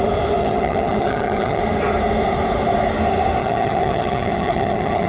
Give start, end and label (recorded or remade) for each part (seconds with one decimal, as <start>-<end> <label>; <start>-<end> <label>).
0.0-0.4 recorded; 0.4-1.6 remade; 1.6-3.4 recorded; 3.4-5.1 remade